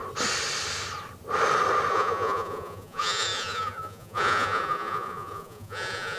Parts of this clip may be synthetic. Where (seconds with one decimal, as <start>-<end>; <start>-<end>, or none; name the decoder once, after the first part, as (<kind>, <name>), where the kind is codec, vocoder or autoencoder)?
1.9-6.2 (vocoder, Vocos)